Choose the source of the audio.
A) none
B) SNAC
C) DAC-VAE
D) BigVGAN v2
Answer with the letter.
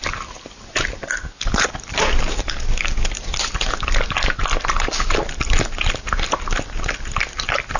A